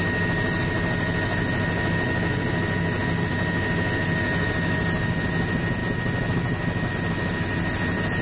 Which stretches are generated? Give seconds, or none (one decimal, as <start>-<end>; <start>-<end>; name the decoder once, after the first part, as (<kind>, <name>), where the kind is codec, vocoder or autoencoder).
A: none